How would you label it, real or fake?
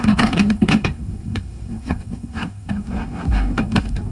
fake